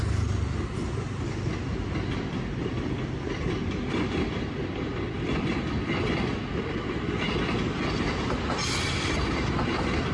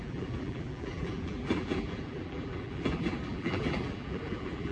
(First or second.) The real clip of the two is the first